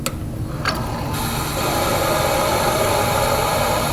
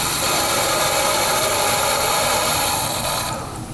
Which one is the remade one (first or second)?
second